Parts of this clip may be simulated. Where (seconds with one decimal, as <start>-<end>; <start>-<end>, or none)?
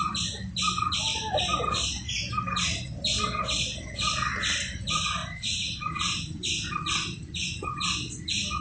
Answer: none